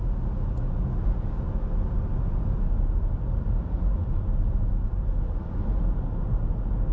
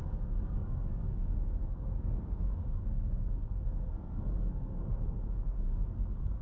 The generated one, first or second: second